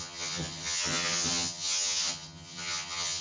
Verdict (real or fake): fake